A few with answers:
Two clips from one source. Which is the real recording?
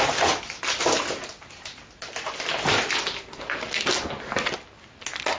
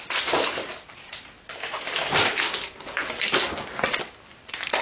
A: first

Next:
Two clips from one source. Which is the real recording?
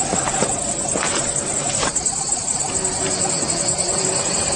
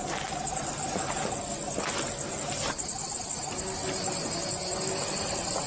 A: second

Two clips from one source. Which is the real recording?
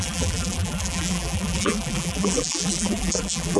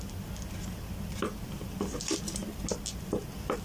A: second